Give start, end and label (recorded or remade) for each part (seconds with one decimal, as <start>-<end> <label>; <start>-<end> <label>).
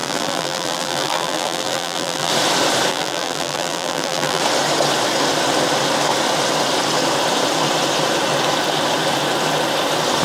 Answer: 0.0-2.3 remade; 2.3-2.9 recorded; 2.9-4.4 remade; 4.4-10.2 recorded